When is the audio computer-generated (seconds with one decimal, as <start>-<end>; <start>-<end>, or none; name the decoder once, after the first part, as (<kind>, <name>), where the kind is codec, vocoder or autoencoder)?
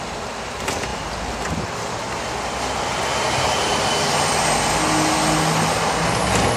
none